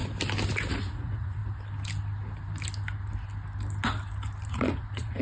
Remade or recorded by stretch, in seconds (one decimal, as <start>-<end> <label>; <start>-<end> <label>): 0.0-0.7 recorded; 0.7-1.4 remade; 1.4-4.5 recorded; 4.5-5.2 remade